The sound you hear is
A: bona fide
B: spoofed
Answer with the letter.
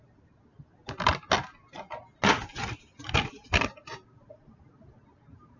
A